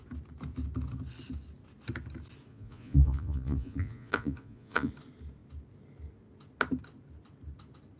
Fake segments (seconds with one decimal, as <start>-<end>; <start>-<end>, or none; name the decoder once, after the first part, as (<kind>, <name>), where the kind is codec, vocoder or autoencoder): 2.5-4.9 (vocoder, Vocos)